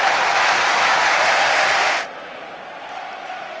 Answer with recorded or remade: recorded